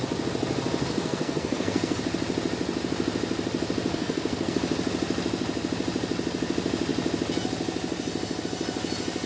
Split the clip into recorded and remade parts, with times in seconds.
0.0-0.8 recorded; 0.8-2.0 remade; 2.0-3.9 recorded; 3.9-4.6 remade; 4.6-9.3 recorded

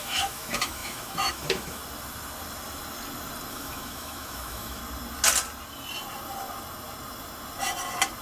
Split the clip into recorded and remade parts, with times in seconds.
0.0-1.8 remade; 1.8-3.5 recorded; 3.5-4.8 remade; 4.8-8.2 recorded

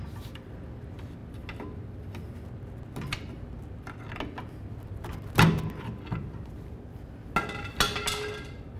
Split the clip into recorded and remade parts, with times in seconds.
0.0-8.8 recorded

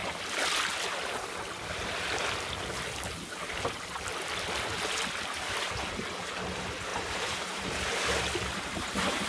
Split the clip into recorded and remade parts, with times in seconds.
0.0-6.9 recorded; 6.9-8.2 remade; 8.2-9.3 recorded

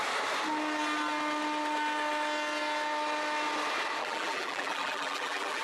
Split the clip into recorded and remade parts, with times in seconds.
0.0-4.0 recorded; 4.0-5.6 remade

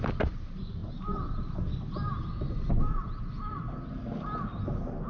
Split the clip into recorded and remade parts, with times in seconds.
0.0-5.1 recorded

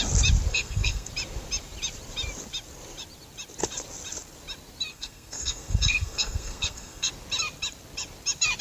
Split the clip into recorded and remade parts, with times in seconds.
0.0-0.5 recorded; 0.5-1.1 remade; 1.1-4.9 recorded; 4.9-7.1 remade; 7.1-8.6 recorded